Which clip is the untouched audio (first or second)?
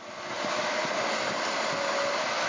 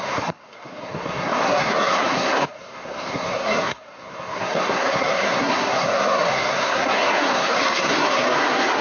first